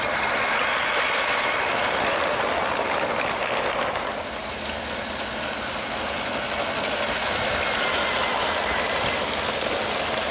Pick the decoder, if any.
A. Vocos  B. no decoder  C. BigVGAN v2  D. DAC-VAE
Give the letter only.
B